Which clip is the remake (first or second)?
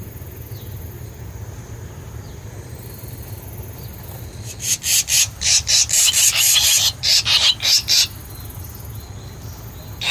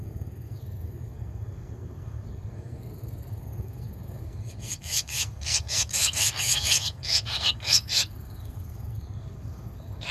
second